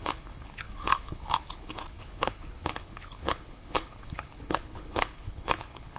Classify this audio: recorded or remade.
remade